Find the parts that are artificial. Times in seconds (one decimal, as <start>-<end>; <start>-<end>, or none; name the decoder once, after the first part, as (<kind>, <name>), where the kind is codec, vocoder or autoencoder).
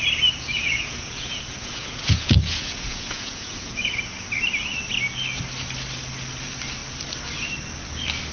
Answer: 0.6-4.0 (vocoder, Vocos)